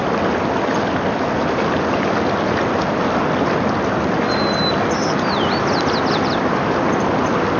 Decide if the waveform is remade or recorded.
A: recorded